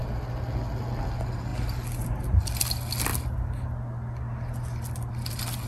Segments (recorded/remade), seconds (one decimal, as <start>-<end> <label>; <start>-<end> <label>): 0.0-5.7 recorded